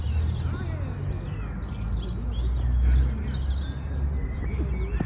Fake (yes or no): no